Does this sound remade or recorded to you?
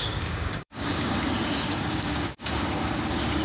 remade